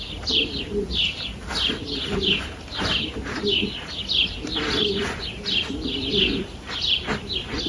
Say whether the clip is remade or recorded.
recorded